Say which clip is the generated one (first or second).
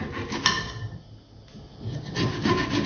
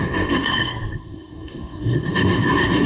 second